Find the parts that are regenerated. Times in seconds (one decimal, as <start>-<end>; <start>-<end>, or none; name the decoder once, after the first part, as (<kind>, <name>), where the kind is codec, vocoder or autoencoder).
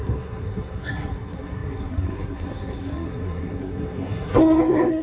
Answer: 0.0-5.0 (codec, SNAC)